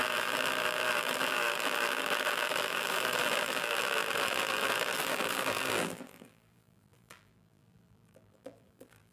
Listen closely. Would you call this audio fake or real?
fake